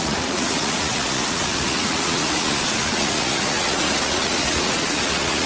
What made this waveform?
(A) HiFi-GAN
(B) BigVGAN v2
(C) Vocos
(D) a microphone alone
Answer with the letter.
C